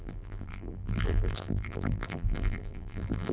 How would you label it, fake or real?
fake